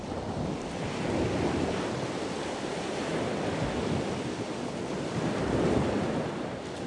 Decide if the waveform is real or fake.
real